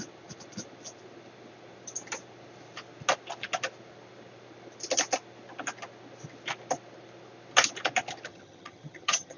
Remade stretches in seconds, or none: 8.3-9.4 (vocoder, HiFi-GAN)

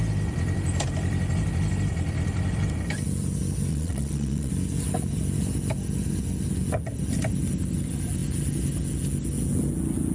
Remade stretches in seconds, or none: 3.7-4.5 (vocoder, Vocos)

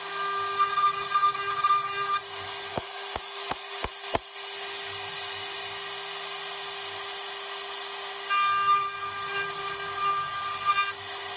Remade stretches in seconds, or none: 2.7-3.9 (codec, DAC)